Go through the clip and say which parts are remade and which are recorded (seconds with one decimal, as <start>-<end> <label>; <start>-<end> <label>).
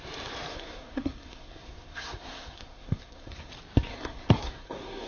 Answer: 0.0-0.5 recorded; 0.5-3.5 remade; 3.5-3.9 recorded; 3.9-5.1 remade